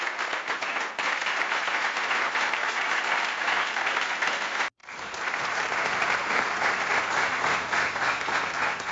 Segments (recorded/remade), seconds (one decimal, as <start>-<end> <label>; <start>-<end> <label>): 0.0-1.2 recorded; 1.2-3.0 remade; 3.0-4.8 recorded; 4.8-7.0 remade; 7.0-8.9 recorded